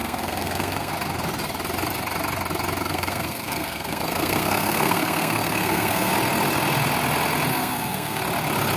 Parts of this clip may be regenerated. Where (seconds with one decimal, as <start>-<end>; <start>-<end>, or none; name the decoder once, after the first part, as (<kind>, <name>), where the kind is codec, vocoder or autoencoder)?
0.0-0.9 (codec, SNAC); 2.8-6.1; 7.5-8.2